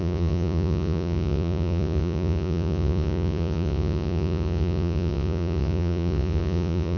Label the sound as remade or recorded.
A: remade